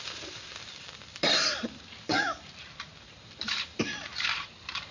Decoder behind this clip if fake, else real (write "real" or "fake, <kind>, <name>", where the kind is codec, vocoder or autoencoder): fake, vocoder, BigVGAN v2